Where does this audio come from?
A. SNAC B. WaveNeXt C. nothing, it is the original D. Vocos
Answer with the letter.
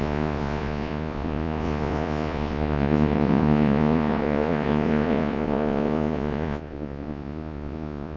D